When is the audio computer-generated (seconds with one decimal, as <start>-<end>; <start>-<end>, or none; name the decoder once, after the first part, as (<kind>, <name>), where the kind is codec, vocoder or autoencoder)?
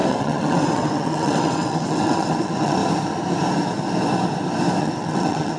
0.0-2.8 (vocoder, WaveNeXt); 4.8-5.6